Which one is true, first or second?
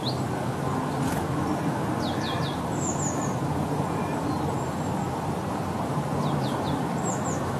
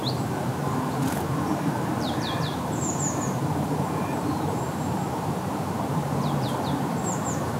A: first